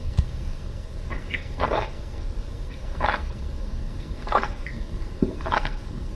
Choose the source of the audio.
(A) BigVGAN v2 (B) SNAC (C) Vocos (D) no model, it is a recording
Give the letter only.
B